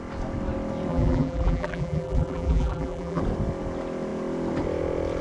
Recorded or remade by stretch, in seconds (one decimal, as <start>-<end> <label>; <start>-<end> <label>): 0.0-0.9 recorded; 0.9-3.2 remade; 3.2-5.2 recorded